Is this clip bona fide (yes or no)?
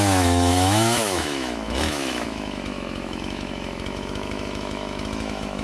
no